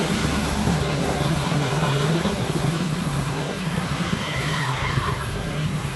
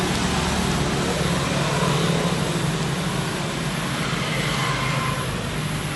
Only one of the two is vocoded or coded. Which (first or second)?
first